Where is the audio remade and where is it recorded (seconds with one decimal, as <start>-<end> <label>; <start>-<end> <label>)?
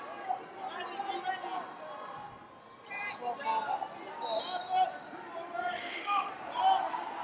0.0-5.8 recorded; 5.8-6.3 remade; 6.3-7.2 recorded